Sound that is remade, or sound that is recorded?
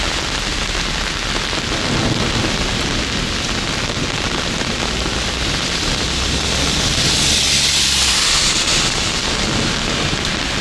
recorded